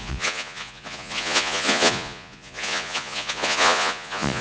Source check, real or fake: fake